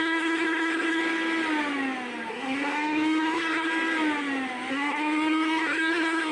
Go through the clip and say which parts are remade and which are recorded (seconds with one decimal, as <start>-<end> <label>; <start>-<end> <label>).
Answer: 0.0-1.0 remade; 1.0-2.3 recorded; 2.3-3.7 remade; 3.7-4.7 recorded; 4.7-6.3 remade